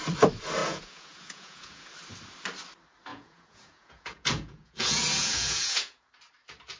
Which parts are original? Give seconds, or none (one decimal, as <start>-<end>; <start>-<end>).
0.0-0.6; 1.9-3.1; 6.1-6.8